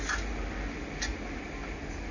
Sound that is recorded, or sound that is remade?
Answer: recorded